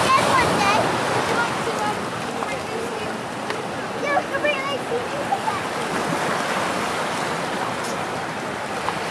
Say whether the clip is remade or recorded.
recorded